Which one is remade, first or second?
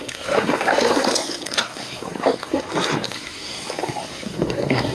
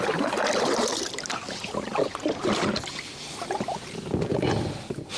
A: first